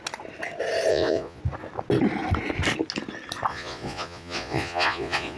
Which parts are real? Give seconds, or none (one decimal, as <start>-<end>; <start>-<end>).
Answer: 0.0-0.9; 1.4-3.5